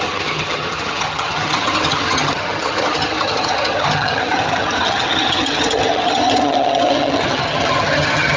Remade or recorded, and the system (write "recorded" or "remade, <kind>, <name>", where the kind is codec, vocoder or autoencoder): remade, vocoder, HiFi-GAN